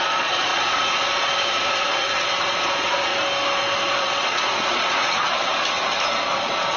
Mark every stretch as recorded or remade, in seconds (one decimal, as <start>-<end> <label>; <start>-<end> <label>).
0.0-3.1 remade; 3.1-3.9 recorded; 3.9-5.5 remade; 5.5-6.1 recorded; 6.1-6.8 remade